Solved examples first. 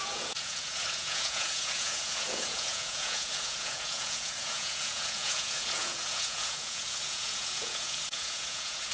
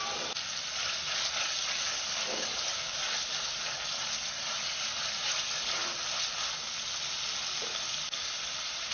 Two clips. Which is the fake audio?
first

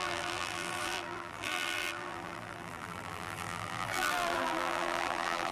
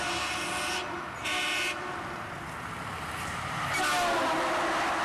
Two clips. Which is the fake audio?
first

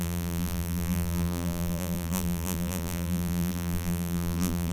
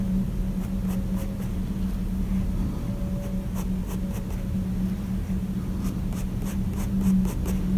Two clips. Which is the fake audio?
first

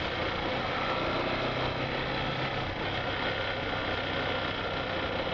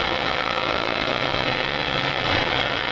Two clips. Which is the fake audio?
second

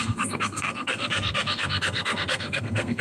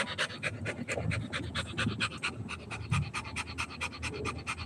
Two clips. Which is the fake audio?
first